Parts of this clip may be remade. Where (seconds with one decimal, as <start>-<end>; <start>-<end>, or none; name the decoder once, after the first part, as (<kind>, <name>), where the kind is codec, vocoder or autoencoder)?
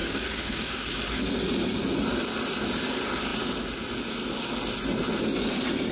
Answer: 0.0-1.0 (codec, DAC)